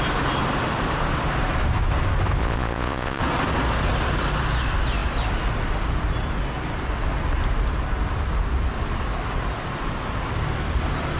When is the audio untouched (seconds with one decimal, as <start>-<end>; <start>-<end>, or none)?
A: 0.0-2.4; 3.2-11.2